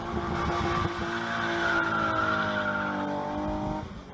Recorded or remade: recorded